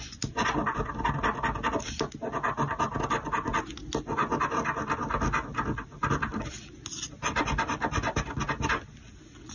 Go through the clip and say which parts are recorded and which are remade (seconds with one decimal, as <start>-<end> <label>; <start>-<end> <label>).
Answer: 0.0-9.5 recorded